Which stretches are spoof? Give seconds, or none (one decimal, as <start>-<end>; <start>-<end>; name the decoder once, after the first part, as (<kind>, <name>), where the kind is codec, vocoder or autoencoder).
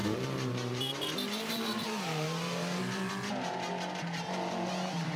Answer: 0.0-3.1 (vocoder, BigVGAN v2)